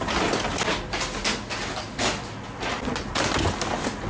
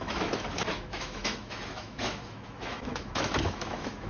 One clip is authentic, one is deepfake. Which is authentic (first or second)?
first